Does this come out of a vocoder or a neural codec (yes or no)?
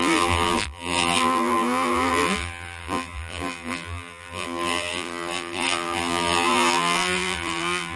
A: yes